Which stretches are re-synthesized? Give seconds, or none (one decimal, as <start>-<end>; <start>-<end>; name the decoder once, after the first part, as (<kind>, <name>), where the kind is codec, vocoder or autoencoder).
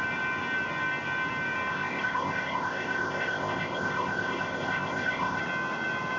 1.7-5.4 (codec, ZipCodec)